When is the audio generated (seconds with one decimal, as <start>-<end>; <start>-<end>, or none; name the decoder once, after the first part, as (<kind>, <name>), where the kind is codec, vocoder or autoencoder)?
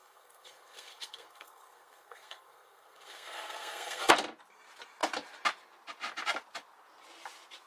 0.0-4.1 (codec, SNAC)